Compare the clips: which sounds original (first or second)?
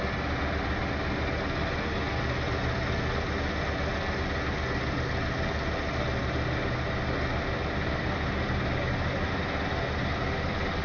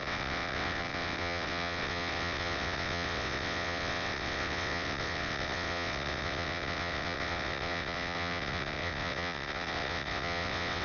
first